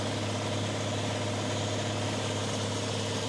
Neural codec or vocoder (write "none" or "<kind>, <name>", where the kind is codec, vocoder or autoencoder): none